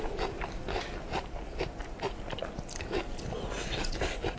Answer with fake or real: real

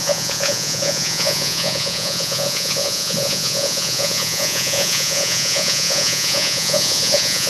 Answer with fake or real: fake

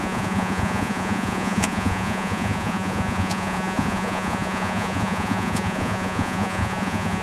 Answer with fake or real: fake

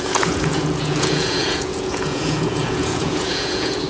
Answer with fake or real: fake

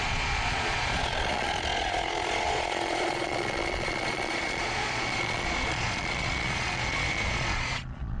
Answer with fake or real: fake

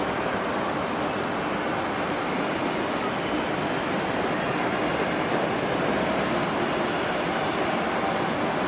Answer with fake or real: real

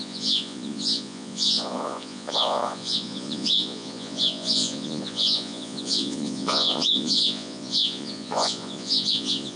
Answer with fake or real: fake